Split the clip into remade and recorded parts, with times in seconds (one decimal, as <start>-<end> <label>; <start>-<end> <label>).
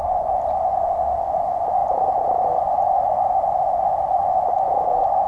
0.0-5.3 recorded